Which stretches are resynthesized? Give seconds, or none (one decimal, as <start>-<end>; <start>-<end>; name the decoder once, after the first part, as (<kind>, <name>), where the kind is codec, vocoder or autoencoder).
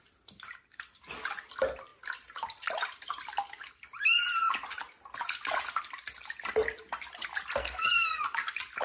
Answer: 7.6-8.2 (codec, SNAC)